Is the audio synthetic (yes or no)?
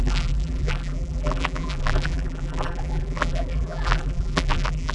yes